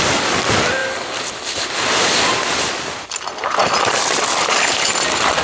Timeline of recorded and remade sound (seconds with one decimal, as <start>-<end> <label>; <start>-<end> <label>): 0.0-5.4 recorded